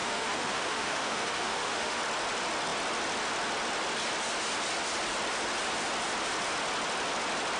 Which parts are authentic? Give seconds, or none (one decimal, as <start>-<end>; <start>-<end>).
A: 2.0-7.6